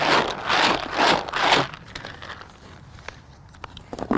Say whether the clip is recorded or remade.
recorded